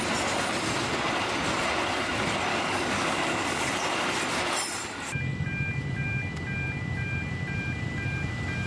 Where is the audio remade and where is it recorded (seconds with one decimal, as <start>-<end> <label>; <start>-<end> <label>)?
0.0-2.5 recorded; 2.5-3.6 remade; 3.6-8.7 recorded